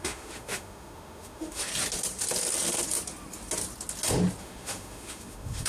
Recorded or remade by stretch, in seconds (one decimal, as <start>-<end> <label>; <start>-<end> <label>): 0.0-1.7 remade; 1.7-4.4 recorded; 4.4-5.7 remade